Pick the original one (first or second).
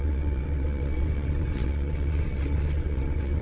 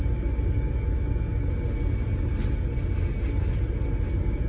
second